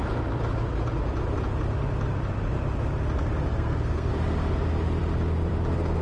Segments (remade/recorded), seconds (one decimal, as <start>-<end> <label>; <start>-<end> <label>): 0.0-3.5 recorded; 3.5-4.1 remade; 4.1-6.0 recorded

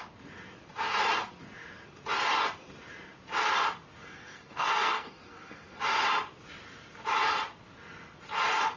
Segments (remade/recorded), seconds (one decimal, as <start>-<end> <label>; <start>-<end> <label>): 0.0-4.0 recorded; 4.0-5.8 remade; 5.8-8.8 recorded

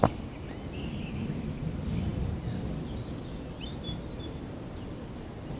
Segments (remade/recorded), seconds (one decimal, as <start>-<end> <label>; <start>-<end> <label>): 0.0-5.6 recorded

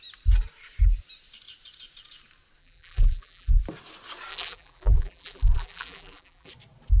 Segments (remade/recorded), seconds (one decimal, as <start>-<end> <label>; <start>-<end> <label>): 0.0-2.6 recorded; 2.6-3.6 remade; 3.6-4.3 recorded; 4.3-6.5 remade; 6.5-7.0 recorded